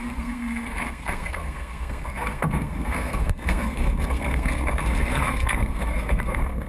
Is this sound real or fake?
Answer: fake